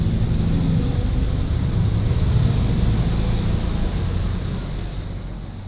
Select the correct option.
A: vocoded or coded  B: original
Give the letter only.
B